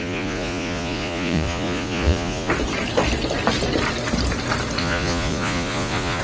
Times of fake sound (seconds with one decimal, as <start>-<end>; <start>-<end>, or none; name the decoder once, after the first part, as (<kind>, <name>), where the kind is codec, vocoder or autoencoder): 0.0-2.5 (vocoder, Vocos); 4.8-6.2